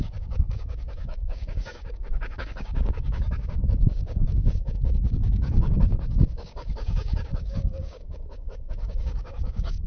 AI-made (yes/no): yes